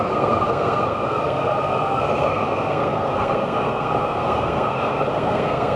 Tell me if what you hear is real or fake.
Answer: fake